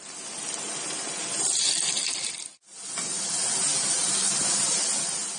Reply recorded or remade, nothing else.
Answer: recorded